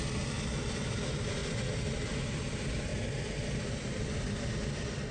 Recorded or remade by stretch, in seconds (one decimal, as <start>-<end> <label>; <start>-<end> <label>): 0.0-5.1 recorded